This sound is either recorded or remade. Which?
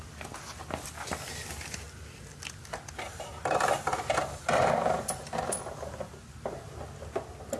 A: recorded